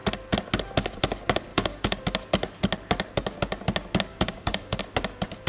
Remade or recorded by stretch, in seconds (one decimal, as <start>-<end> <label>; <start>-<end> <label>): 0.0-1.5 recorded; 1.5-2.0 remade; 2.0-4.1 recorded; 4.1-4.8 remade; 4.8-5.5 recorded